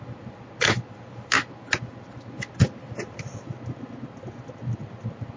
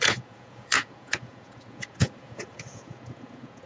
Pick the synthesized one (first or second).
second